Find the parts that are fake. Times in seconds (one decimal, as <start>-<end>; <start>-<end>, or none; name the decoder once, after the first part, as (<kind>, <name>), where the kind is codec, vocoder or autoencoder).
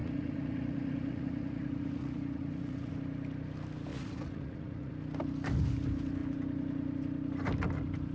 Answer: 0.0-2.9 (vocoder, Vocos); 3.9-4.9